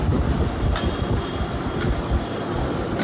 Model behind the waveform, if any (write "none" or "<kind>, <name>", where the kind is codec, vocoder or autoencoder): none